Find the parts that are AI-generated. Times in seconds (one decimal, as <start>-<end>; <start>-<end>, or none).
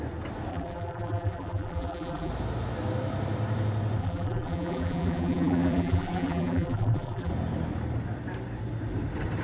0.5-2.3; 4.0-7.3